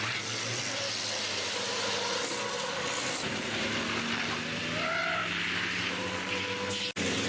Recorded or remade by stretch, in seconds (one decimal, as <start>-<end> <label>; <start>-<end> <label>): 0.0-7.3 recorded